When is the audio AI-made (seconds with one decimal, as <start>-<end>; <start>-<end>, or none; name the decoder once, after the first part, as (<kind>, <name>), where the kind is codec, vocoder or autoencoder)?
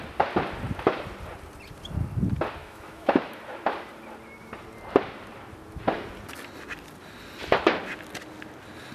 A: 2.6-3.4 (autoencoder, DAC-VAE)